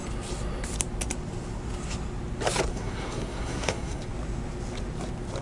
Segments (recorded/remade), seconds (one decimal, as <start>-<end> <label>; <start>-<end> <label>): 0.0-2.7 recorded; 2.7-4.0 remade; 4.0-5.4 recorded